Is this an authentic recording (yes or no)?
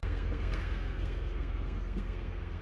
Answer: no